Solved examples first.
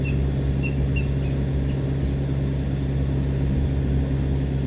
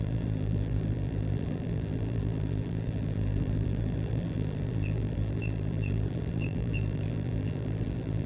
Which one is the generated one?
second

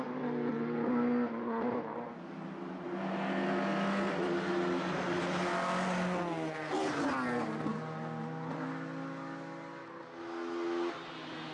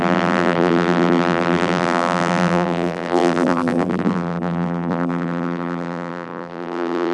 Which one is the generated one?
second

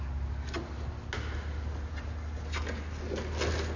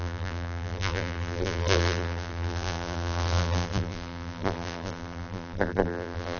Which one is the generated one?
second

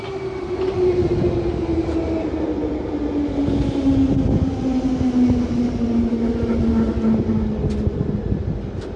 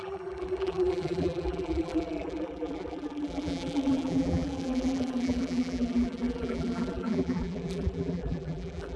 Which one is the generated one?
second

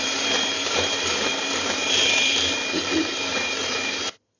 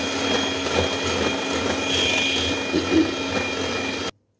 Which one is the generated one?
first